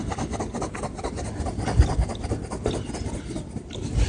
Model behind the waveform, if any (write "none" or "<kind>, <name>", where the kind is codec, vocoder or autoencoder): none